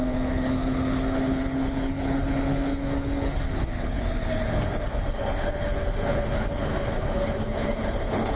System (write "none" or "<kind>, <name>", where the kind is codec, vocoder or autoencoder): codec, HILCodec